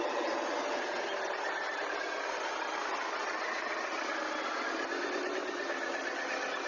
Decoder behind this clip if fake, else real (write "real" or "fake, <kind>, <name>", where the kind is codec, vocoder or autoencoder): real